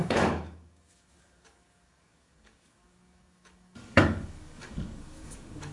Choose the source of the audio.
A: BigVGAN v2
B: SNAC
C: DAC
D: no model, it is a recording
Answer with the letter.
C